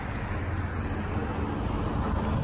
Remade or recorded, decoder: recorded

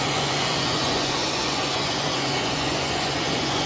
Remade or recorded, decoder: remade, vocoder, Vocos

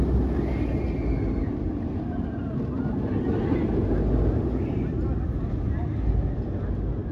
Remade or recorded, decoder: recorded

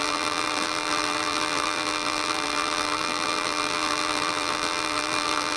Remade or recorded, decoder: remade, vocoder, BigVGAN v2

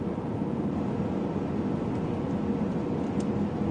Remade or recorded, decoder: recorded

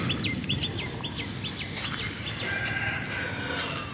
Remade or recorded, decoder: recorded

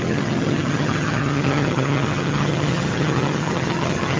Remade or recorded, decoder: remade, vocoder, HiFi-GAN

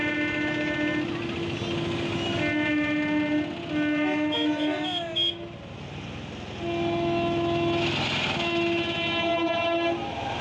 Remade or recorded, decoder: recorded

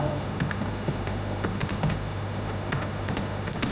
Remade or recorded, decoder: remade, autoencoder, DAC-VAE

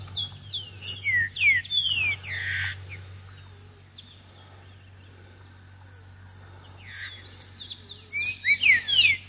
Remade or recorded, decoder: recorded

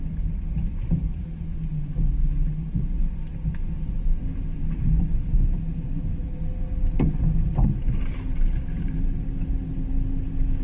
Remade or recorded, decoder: recorded